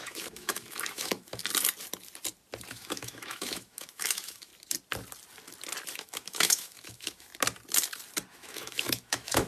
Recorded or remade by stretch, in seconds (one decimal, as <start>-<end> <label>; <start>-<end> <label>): 0.0-1.4 remade; 1.4-2.7 recorded; 2.7-4.5 remade; 4.5-5.9 recorded; 5.9-7.3 remade; 7.3-8.3 recorded; 8.3-9.5 remade